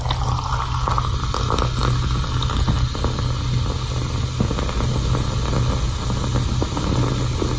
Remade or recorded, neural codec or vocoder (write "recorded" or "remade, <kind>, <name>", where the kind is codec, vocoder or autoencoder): recorded